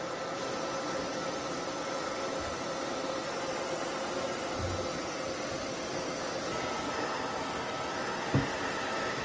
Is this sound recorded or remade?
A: recorded